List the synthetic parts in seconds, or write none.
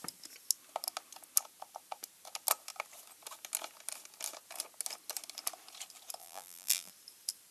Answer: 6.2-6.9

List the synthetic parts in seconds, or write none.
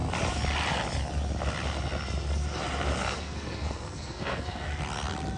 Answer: 3.0-4.7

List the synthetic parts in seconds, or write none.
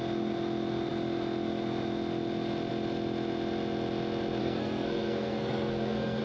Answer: 4.4-6.2